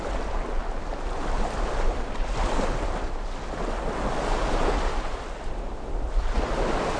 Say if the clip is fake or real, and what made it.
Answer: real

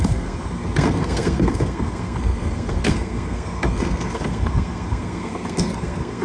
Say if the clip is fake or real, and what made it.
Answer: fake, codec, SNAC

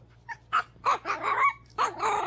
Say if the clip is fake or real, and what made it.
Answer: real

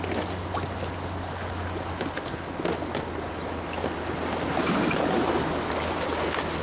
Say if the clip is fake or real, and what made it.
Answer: real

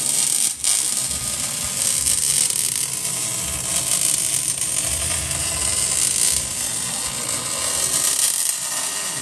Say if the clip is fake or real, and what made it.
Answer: real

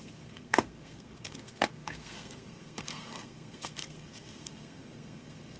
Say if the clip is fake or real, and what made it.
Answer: fake, codec, SNAC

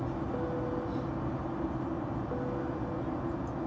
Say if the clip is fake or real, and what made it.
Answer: real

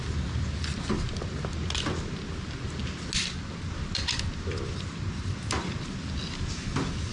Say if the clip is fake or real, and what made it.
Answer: real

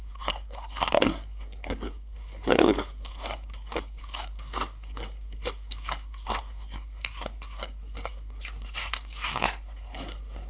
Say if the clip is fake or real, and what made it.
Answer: fake, codec, SNAC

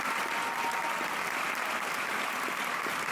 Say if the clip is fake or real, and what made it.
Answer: real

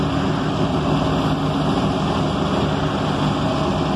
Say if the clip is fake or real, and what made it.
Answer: real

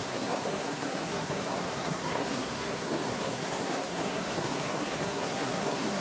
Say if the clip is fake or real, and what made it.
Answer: fake, codec, SNAC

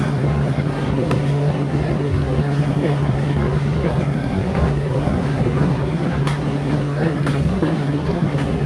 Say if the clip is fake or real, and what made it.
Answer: fake, codec, SNAC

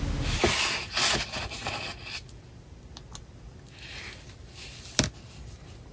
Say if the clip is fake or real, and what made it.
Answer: real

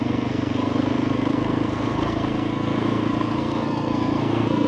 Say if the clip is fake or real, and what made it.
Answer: fake, codec, SNAC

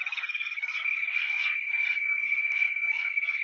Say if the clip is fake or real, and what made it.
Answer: fake, codec, SNAC